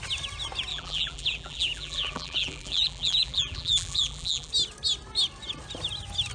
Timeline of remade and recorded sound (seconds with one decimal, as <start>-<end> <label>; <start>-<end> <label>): 0.0-0.7 recorded; 0.7-4.5 remade; 4.5-6.3 recorded